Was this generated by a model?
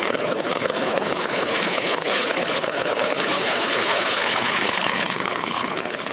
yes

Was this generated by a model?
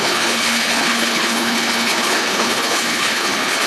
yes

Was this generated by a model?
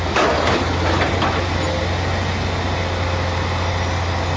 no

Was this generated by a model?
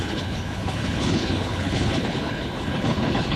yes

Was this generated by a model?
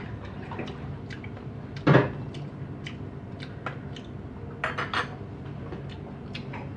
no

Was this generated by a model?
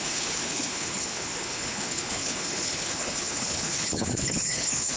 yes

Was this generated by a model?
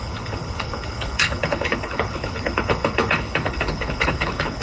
yes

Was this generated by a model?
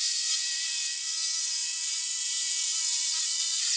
no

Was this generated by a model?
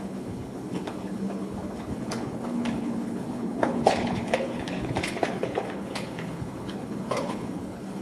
yes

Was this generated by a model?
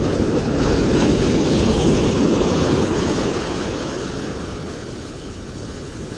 yes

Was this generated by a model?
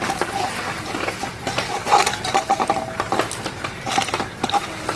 no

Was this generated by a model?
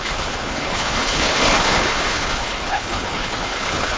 yes